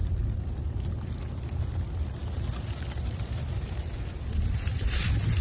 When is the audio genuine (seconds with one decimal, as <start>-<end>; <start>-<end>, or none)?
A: 0.0-5.4